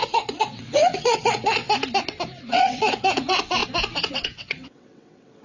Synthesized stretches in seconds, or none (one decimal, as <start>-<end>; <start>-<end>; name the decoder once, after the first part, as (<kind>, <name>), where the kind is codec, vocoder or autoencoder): 0.0-1.6 (vocoder, WaveNeXt); 2.5-3.6; 4.1-5.4